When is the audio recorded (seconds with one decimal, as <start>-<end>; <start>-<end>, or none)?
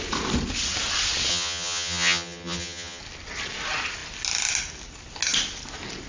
0.0-1.3; 3.0-6.1